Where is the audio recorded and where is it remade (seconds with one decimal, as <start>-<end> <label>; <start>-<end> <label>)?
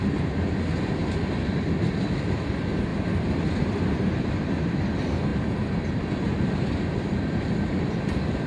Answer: 0.0-2.9 recorded; 2.9-3.7 remade; 3.7-8.5 recorded